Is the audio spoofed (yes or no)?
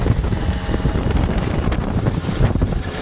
yes